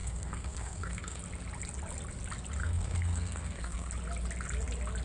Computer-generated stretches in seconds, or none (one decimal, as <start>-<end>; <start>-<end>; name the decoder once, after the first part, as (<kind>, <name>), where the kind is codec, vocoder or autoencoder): 0.0-1.2 (codec, SNAC); 2.6-3.9